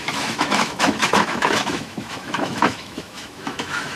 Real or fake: fake